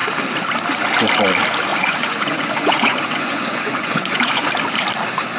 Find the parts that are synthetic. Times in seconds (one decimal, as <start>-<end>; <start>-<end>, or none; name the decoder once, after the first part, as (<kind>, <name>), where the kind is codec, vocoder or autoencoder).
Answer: 1.7-4.5 (vocoder, Vocos)